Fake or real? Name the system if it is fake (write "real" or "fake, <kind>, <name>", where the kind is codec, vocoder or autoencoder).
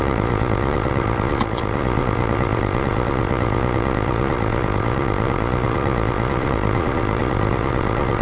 fake, vocoder, Vocos